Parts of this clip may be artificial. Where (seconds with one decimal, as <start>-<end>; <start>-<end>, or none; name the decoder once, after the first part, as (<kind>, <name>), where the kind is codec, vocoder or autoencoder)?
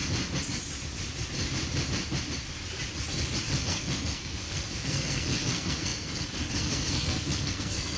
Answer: 3.4-8.0 (codec, SNAC)